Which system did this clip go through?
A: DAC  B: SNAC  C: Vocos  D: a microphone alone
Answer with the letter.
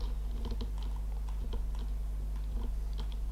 D